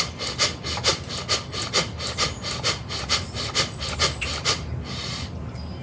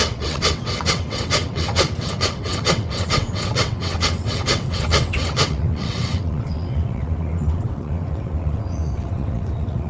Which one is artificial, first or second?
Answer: second